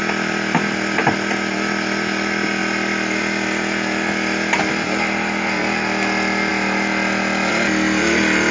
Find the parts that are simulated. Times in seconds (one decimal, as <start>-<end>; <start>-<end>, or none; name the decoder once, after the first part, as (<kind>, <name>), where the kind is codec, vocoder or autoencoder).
none